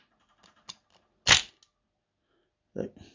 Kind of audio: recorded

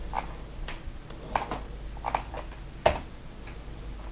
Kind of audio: recorded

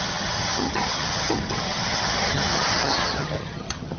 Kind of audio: remade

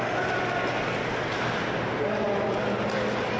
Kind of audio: recorded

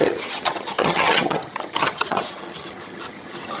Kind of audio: remade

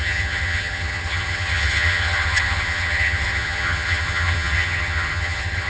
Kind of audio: remade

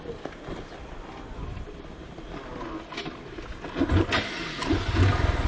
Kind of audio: recorded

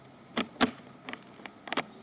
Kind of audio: recorded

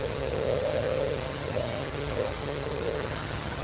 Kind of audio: remade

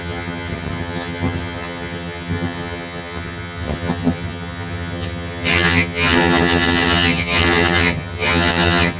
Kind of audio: remade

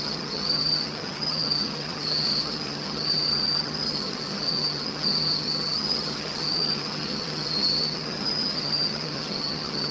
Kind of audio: remade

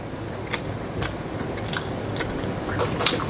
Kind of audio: recorded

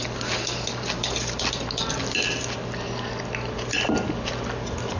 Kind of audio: recorded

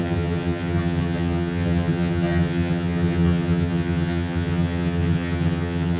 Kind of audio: remade